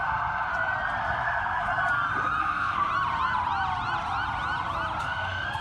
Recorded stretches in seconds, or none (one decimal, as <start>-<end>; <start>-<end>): 0.5-1.0; 1.7-2.4; 2.9-5.0